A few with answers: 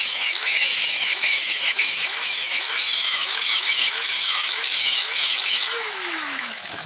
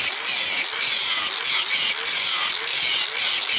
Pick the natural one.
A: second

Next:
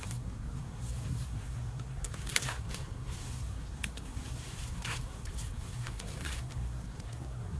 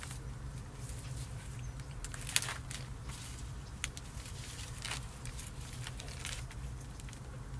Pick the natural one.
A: second